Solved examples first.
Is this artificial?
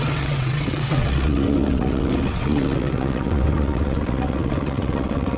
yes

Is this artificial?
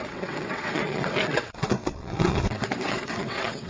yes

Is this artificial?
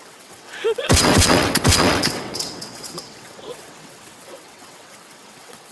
yes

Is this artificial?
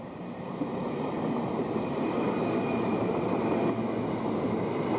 no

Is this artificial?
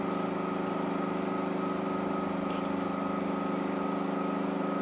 no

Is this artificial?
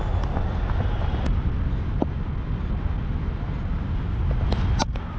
no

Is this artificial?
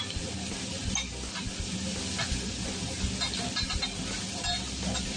no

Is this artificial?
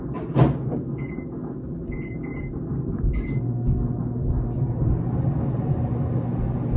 no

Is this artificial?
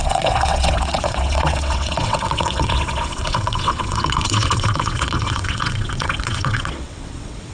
yes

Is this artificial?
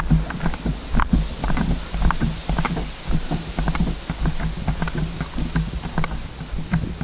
no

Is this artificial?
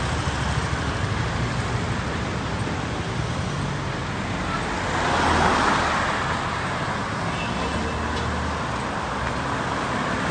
no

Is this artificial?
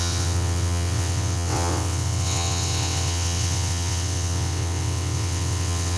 yes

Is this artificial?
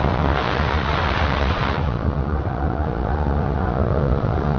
yes